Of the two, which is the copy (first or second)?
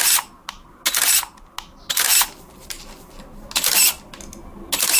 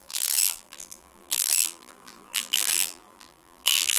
second